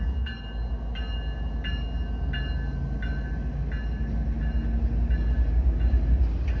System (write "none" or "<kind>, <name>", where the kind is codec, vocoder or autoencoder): none